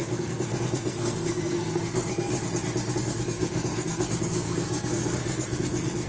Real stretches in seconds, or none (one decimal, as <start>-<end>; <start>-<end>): 2.3-3.0